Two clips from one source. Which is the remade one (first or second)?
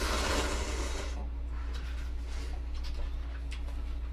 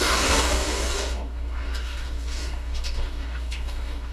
second